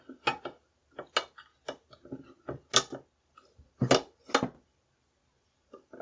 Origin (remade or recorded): recorded